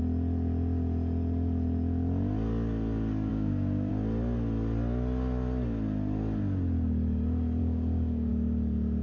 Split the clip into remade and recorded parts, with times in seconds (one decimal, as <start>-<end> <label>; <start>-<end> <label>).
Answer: 0.0-3.3 recorded; 3.3-3.9 remade; 3.9-7.6 recorded; 7.6-8.3 remade; 8.3-9.0 recorded